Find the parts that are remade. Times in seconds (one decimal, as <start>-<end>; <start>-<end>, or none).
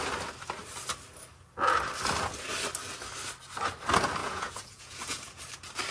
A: 4.2-5.4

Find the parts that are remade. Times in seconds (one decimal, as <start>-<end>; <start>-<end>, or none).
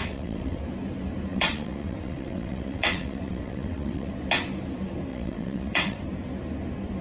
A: 0.0-0.6; 1.3-4.1; 5.1-6.0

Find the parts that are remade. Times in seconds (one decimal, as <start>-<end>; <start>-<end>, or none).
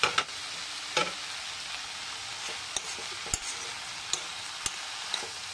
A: none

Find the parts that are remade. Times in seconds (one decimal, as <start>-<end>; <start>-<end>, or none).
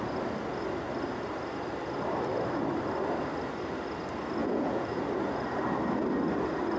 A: 4.4-4.9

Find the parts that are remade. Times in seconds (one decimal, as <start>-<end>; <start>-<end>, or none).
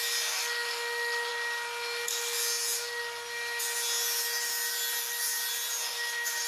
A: none